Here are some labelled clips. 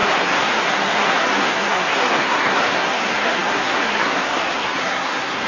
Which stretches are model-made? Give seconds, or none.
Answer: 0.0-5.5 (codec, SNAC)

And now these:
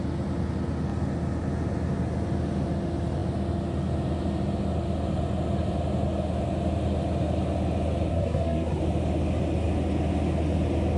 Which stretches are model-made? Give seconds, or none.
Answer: 8.1-8.8 (codec, SNAC)

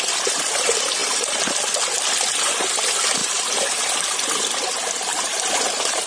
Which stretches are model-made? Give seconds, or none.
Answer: 1.0-1.5 (vocoder, BigVGAN v2); 3.2-3.8; 5.1-6.1